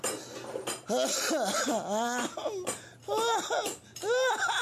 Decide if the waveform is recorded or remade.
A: recorded